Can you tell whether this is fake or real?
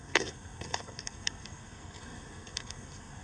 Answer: fake